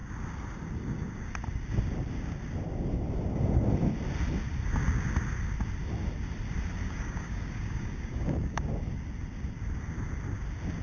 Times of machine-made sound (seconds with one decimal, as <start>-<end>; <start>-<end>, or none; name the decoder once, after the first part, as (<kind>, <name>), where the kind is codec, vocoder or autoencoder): 6.8-8.6 (codec, DAC)